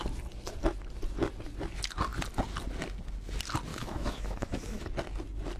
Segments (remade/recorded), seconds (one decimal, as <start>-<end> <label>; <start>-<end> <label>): 0.0-3.7 recorded; 3.7-4.8 remade; 4.8-5.6 recorded